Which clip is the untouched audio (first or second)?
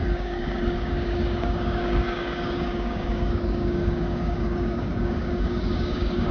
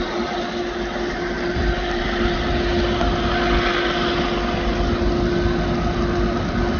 second